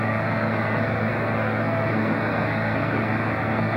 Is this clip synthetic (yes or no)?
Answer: yes